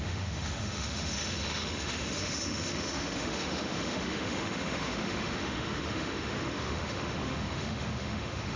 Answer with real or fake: fake